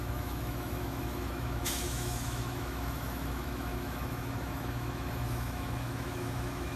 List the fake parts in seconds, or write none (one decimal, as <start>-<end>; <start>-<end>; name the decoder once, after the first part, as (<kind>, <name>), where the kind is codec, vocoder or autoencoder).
0.0-6.8 (autoencoder, DAC-VAE)